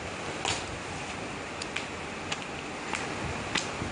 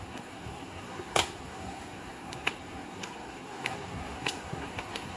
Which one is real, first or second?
first